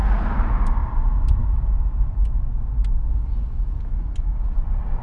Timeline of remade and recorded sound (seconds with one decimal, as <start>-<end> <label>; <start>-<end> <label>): 0.0-5.0 recorded